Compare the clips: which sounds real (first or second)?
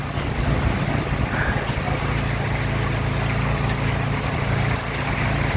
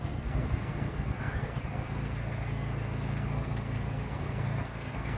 first